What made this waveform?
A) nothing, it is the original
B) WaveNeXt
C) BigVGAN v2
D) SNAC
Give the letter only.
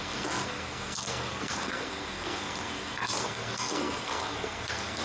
D